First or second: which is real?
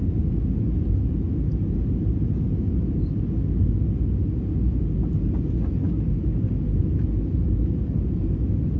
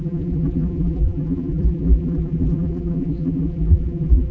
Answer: first